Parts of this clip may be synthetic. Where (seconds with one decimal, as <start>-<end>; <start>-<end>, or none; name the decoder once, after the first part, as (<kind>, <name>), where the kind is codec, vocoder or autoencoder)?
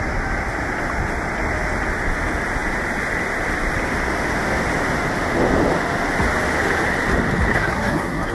7.5-8.3 (codec, SNAC)